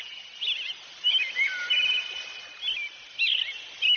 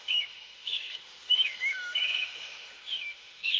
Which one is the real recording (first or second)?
first